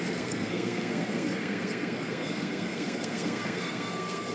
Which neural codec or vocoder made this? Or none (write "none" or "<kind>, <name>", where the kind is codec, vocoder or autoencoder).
codec, SNAC